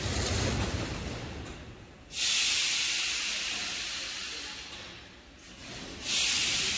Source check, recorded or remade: recorded